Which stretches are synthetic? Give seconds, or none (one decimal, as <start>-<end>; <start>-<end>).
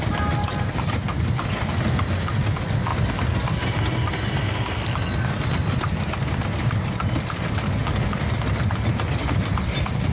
none